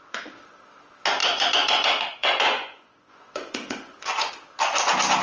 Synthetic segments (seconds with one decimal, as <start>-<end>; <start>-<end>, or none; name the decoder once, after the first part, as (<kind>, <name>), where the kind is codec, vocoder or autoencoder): 1.2-4.3 (vocoder, Vocos)